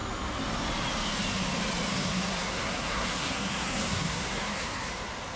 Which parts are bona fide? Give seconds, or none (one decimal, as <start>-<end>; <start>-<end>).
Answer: 0.0-1.9; 4.9-5.4